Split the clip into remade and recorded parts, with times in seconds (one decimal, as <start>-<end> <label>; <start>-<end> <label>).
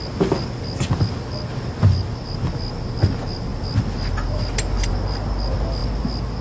0.0-6.4 recorded